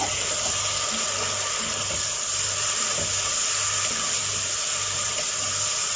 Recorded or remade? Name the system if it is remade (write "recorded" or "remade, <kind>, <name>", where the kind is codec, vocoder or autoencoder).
remade, vocoder, BigVGAN v2